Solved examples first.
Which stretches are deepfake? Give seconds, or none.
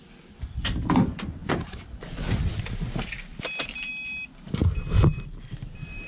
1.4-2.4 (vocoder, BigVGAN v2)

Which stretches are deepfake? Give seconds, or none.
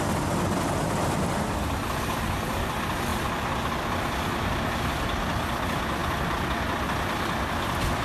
none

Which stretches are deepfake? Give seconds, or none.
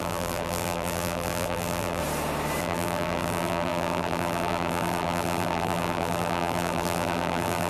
0.0-2.0 (vocoder, BigVGAN v2); 2.6-7.7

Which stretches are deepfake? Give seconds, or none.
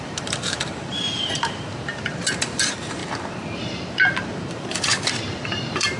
0.0-3.0 (vocoder, BigVGAN v2); 3.9-6.0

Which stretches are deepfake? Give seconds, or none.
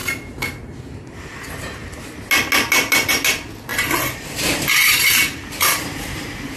3.7-6.6 (vocoder, BigVGAN v2)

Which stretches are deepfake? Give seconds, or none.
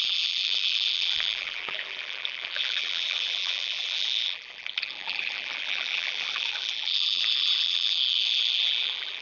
0.0-9.2 (vocoder, BigVGAN v2)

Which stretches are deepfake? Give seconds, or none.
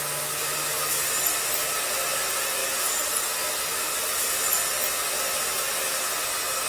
none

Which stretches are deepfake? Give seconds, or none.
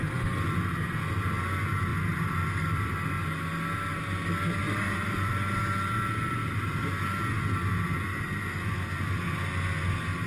1.9-3.2 (vocoder, BigVGAN v2); 4.6-5.3; 6.4-6.9